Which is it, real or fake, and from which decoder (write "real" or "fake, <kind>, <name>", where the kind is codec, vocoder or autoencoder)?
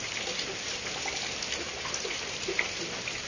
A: real